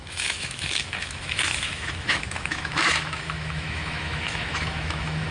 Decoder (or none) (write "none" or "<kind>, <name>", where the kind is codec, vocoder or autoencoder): autoencoder, DAC-VAE